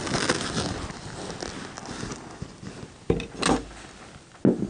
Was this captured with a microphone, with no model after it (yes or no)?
yes